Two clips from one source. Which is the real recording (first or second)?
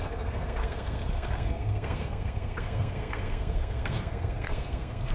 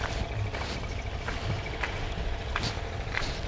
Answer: second